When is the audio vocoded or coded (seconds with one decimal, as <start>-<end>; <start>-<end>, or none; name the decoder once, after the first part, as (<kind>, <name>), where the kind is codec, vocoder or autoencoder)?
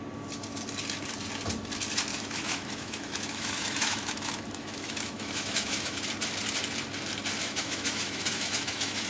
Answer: 2.1-6.0 (autoencoder, DAC-VAE); 7.4-9.1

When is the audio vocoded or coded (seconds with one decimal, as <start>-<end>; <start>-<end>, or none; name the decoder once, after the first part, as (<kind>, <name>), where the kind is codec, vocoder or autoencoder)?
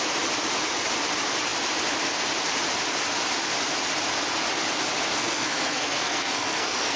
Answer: 5.1-7.0 (codec, SNAC)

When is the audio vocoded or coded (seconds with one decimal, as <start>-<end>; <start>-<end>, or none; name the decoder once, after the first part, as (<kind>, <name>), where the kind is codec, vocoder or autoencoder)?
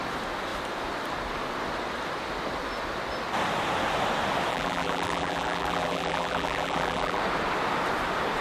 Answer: 4.5-7.2 (vocoder, BigVGAN v2)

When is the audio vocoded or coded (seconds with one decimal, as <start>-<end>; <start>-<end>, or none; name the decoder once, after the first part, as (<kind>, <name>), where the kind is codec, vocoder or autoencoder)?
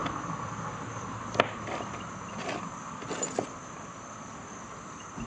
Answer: none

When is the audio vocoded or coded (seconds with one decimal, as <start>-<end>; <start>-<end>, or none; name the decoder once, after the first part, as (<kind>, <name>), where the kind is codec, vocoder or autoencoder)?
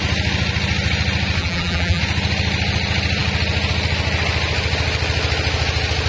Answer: 1.4-2.0 (vocoder, BigVGAN v2)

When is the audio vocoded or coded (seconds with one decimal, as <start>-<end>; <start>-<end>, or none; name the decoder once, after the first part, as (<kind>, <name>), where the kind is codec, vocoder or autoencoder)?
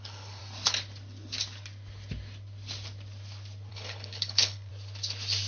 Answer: 0.0-0.4 (codec, HILCodec); 3.7-4.7